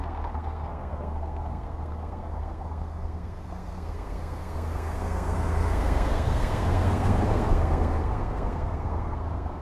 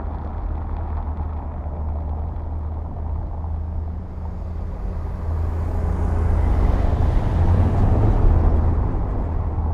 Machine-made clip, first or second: first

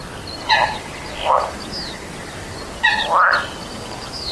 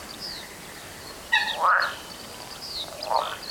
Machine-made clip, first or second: second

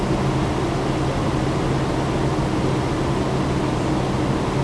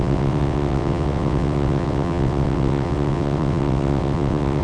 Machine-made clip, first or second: second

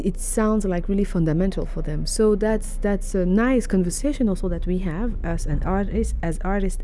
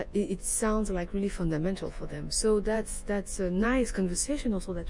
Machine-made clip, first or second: second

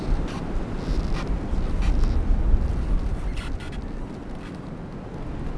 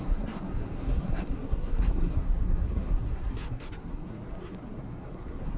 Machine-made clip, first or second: second